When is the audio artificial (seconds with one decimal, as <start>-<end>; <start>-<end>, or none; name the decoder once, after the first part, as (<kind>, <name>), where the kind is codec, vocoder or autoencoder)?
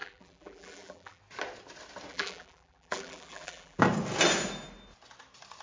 0.0-1.2 (vocoder, BigVGAN v2); 2.1-3.8